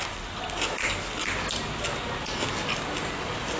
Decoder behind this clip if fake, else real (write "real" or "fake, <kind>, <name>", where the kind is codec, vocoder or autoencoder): real